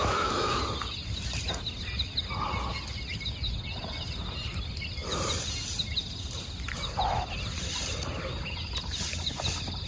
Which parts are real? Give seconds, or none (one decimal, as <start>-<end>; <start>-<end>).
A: 0.6-9.9